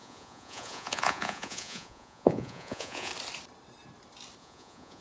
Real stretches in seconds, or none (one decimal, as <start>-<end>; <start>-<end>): 3.1-4.4